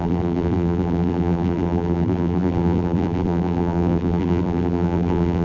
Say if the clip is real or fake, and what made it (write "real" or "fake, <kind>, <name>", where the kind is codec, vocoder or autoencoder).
fake, vocoder, BigVGAN v2